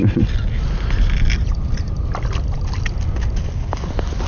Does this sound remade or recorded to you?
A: recorded